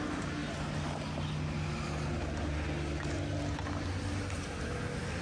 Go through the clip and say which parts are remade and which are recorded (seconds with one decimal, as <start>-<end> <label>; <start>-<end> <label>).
0.0-5.2 recorded